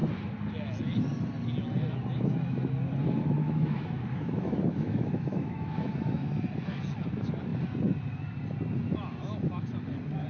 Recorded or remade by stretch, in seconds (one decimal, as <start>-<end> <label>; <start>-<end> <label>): 0.0-3.4 recorded; 3.4-6.3 remade; 6.3-10.3 recorded